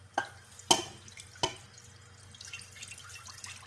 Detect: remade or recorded recorded